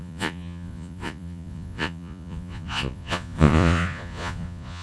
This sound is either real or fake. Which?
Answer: fake